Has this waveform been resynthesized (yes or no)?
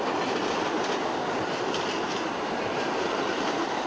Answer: no